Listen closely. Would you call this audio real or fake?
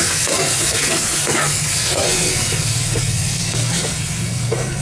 fake